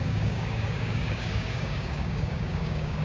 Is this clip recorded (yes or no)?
no